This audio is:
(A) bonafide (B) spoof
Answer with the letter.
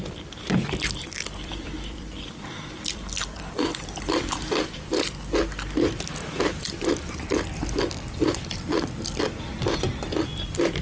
B